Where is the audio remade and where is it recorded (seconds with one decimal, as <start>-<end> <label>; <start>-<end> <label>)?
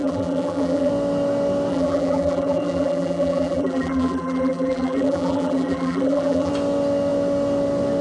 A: 0.0-0.9 remade; 0.9-1.7 recorded; 1.7-6.5 remade; 6.5-8.0 recorded